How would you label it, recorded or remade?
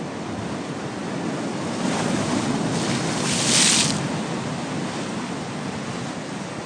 recorded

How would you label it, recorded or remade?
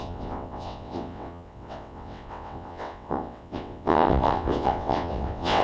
remade